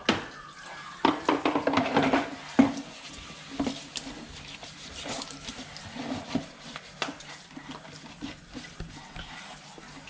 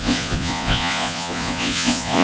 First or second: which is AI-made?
second